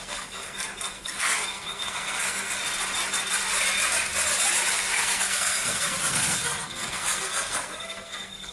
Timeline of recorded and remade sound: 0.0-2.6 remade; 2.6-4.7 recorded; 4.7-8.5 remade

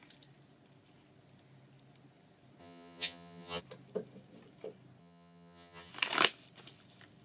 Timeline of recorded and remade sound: 0.0-2.6 recorded; 2.6-3.6 remade; 3.6-5.0 recorded; 5.0-5.9 remade; 5.9-7.2 recorded

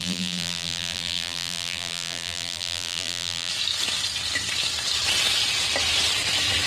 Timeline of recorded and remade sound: 0.0-3.5 remade; 3.5-6.7 recorded

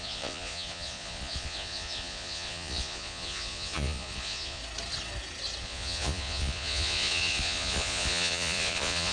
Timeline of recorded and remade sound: 0.0-4.6 remade; 4.6-5.6 recorded; 5.6-9.1 remade

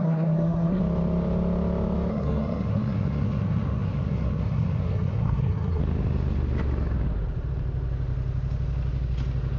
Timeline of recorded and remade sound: 0.0-0.8 remade; 0.8-2.1 recorded; 2.1-5.8 remade; 5.8-9.6 recorded